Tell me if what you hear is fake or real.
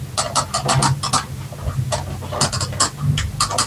real